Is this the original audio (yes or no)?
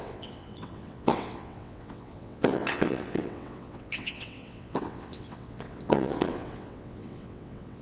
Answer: no